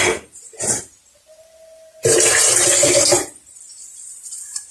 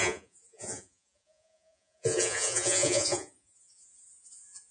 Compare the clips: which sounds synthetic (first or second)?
second